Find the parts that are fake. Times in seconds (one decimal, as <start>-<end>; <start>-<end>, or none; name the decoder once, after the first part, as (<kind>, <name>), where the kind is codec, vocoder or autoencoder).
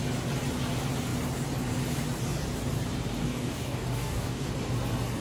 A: 3.2-4.5 (codec, DAC)